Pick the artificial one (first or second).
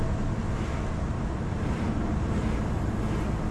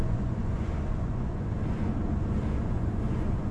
second